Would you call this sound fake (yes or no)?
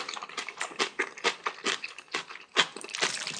no